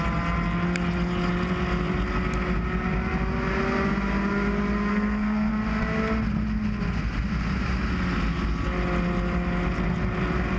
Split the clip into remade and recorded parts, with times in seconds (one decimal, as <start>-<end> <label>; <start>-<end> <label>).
0.0-4.9 recorded; 4.9-5.5 remade; 5.5-10.6 recorded